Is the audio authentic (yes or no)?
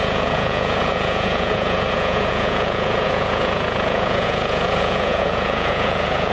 no